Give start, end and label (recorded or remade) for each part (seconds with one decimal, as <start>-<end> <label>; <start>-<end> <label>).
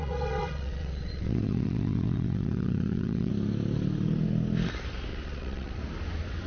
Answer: 0.0-3.3 remade; 3.3-5.1 recorded; 5.1-5.8 remade; 5.8-6.5 recorded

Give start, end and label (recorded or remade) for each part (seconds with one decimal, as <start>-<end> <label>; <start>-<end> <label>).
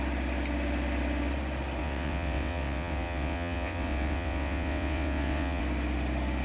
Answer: 0.0-1.8 recorded; 1.8-5.6 remade; 5.6-6.4 recorded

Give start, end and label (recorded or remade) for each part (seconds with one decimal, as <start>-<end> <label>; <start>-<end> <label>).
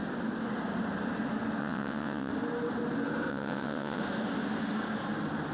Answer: 0.0-1.6 recorded; 1.6-2.3 remade; 2.3-3.3 recorded; 3.3-4.0 remade; 4.0-5.5 recorded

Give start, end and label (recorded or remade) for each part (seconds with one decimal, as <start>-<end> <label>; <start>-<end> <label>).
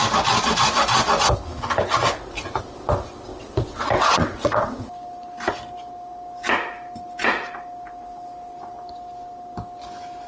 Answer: 0.0-3.3 recorded; 3.3-4.8 remade; 4.8-10.3 recorded